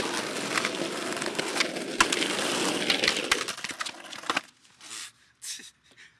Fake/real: real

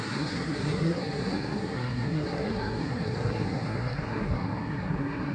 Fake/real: fake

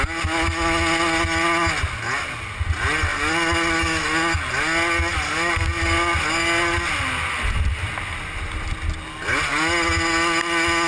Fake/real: real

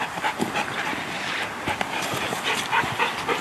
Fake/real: real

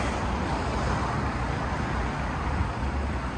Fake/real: real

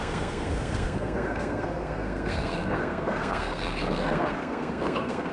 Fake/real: fake